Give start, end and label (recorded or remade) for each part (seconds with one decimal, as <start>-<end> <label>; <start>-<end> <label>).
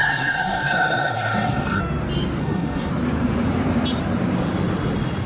0.0-1.8 remade; 1.8-2.4 recorded; 2.4-2.9 remade; 2.9-5.3 recorded